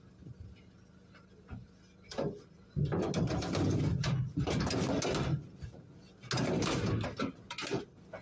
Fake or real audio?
real